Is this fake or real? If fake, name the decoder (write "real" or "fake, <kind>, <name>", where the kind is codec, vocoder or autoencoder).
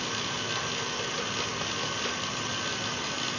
real